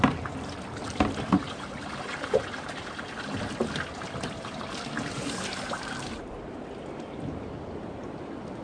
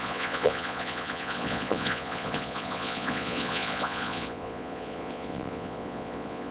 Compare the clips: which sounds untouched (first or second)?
first